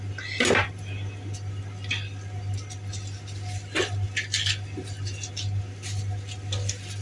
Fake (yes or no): no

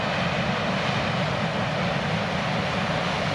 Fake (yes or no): no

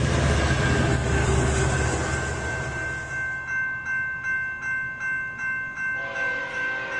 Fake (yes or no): no